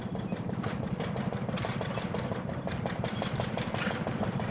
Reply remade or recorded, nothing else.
remade